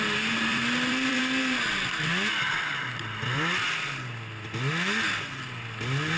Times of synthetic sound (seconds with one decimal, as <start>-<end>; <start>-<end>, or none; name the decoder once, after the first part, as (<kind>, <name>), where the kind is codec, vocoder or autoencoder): 0.5-1.2 (vocoder, BigVGAN v2)